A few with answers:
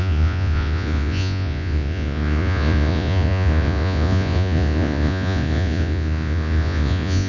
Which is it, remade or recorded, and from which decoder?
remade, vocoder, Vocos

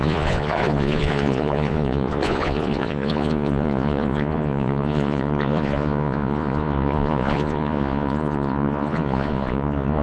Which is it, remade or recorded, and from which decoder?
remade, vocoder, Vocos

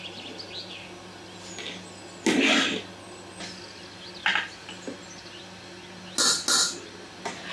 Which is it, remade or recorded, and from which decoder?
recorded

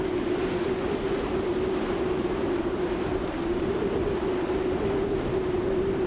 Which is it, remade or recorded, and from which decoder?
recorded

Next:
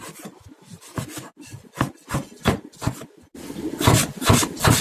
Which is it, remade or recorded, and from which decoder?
recorded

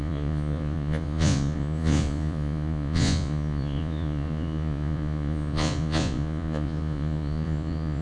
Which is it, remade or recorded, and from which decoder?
remade, vocoder, Vocos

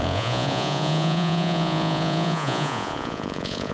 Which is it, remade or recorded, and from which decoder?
remade, vocoder, Vocos